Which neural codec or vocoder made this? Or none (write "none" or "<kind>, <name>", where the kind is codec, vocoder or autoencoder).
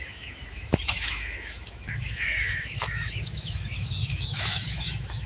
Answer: autoencoder, DAC-VAE